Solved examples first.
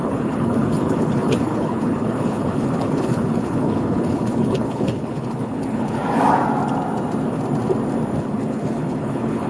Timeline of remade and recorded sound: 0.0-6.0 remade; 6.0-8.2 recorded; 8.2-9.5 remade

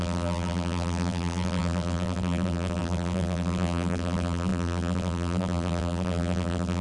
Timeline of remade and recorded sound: 0.0-6.8 remade

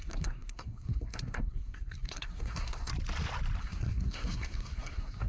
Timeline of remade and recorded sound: 0.0-2.9 remade; 2.9-3.6 recorded; 3.6-5.3 remade

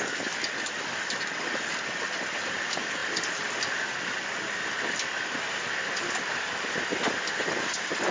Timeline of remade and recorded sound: 0.0-8.1 recorded